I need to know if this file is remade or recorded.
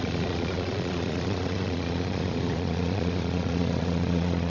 remade